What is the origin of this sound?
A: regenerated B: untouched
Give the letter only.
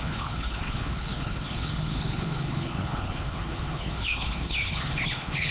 A